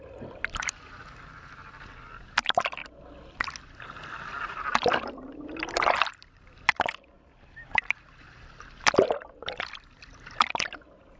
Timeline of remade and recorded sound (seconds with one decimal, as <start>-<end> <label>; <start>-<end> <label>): 0.0-2.8 remade; 2.8-3.6 recorded; 3.6-11.2 remade